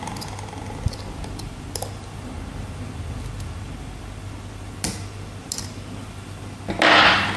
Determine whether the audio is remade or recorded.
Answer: recorded